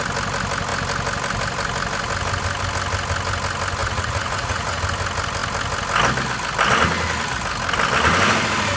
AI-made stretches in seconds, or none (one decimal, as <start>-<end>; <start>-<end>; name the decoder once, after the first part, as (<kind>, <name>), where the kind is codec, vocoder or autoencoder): 3.8-4.8 (vocoder, Vocos)